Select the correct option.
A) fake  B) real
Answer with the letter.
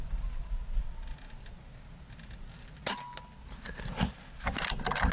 B